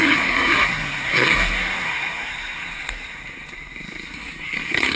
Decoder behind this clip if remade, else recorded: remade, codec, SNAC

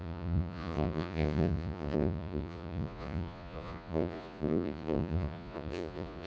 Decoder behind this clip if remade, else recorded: remade, vocoder, Vocos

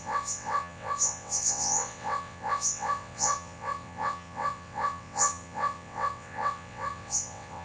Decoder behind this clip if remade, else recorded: remade, vocoder, WaveNeXt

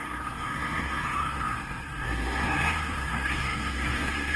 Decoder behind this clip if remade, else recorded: remade, codec, SNAC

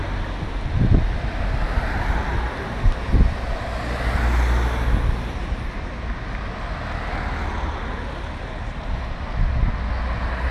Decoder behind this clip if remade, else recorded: recorded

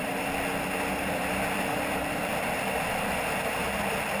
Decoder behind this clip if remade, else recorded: remade, vocoder, BigVGAN v2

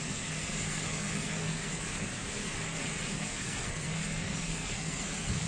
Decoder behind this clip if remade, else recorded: remade, codec, SNAC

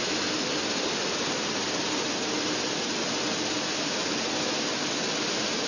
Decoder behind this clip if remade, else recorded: recorded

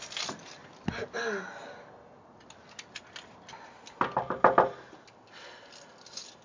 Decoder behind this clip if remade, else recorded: recorded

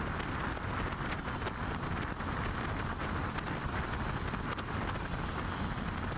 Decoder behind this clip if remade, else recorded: recorded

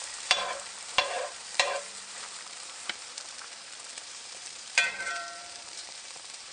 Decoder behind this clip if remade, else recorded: remade, vocoder, BigVGAN v2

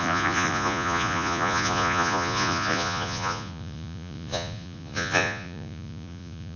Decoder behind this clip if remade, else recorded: remade, vocoder, Vocos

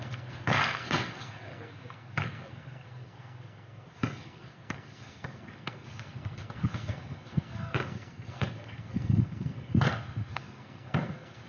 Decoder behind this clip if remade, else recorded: remade, codec, SNAC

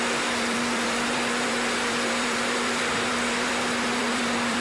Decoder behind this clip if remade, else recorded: remade, vocoder, BigVGAN v2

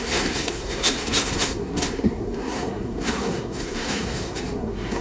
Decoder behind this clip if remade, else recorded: remade, codec, SNAC